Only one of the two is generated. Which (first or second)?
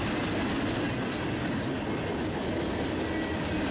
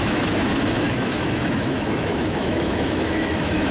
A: second